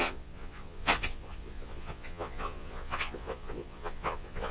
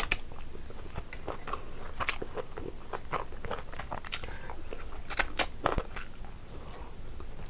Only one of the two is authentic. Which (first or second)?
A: second